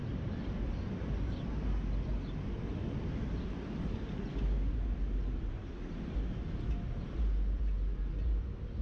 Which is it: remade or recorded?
recorded